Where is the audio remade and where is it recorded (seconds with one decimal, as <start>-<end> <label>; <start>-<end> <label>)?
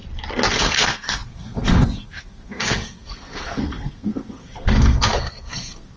0.0-0.5 recorded; 0.5-6.0 remade